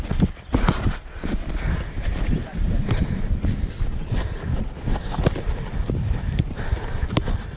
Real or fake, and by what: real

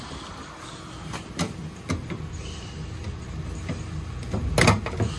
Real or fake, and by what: real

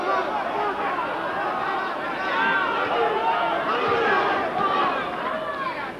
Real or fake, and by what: real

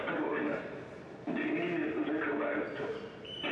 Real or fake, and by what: real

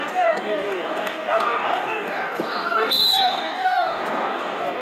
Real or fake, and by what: fake, codec, DAC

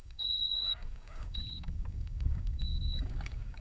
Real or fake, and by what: fake, codec, DAC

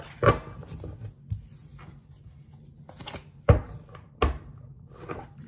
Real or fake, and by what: real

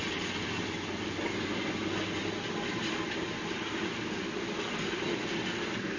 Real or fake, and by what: real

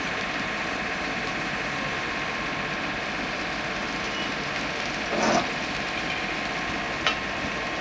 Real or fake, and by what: real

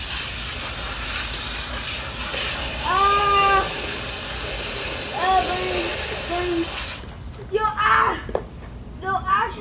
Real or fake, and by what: real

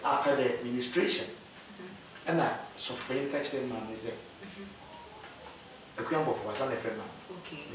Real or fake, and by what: real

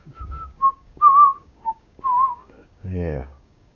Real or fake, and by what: fake, codec, DAC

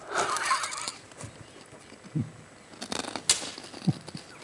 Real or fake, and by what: real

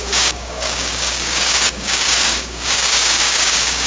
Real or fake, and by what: fake, codec, DAC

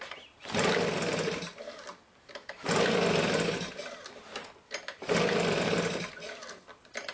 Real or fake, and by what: real